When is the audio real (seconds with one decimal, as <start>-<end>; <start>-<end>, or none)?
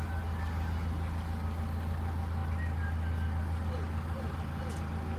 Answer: 0.0-5.2